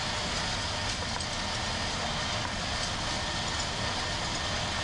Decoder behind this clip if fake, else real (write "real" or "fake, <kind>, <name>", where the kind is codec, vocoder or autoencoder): real